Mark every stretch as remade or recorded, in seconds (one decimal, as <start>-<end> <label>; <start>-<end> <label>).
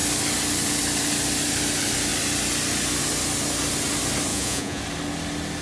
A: 0.0-4.3 recorded; 4.3-4.8 remade; 4.8-5.6 recorded